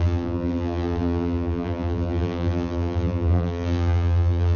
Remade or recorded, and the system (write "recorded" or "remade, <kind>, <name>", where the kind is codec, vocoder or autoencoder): remade, vocoder, BigVGAN v2